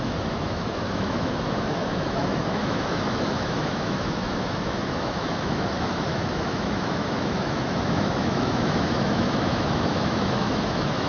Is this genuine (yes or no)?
no